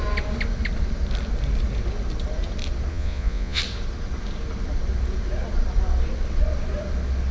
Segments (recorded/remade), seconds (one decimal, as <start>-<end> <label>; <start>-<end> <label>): 0.0-2.9 recorded; 2.9-3.6 remade; 3.6-7.3 recorded